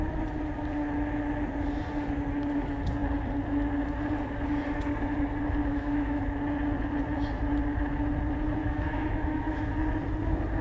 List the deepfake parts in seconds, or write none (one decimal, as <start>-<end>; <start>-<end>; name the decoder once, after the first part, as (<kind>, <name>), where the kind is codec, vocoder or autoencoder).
5.6-6.2 (autoencoder, DAC-VAE); 8.6-9.7